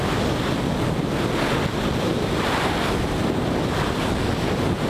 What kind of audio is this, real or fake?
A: real